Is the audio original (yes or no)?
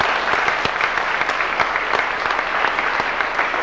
yes